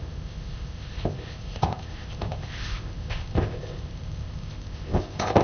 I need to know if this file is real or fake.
fake